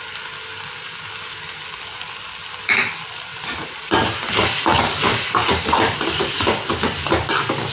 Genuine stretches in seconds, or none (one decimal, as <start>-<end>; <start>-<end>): 0.0-3.3; 6.7-7.7